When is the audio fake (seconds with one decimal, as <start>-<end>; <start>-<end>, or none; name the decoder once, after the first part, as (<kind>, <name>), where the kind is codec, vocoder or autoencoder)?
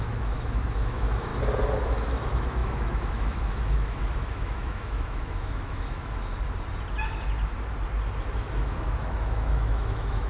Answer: 0.0-1.3 (autoencoder, DAC-VAE); 1.8-6.3; 8.3-10.3